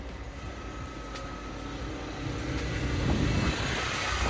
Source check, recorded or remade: recorded